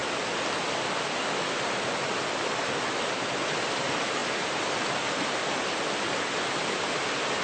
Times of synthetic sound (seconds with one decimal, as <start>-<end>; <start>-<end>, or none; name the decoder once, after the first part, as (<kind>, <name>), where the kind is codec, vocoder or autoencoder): none